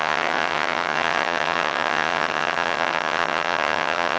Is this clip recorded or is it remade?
remade